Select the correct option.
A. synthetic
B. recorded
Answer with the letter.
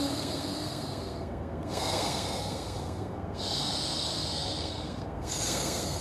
A